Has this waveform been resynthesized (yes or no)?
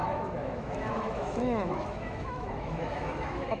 yes